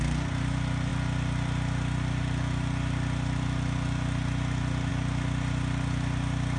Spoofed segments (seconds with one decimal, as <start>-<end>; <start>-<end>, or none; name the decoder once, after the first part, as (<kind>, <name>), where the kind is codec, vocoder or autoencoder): none